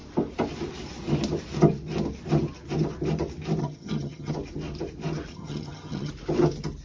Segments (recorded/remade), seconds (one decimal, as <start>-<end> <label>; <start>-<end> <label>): 0.0-3.6 recorded; 3.6-4.3 remade; 4.3-5.3 recorded; 5.3-6.1 remade; 6.1-6.8 recorded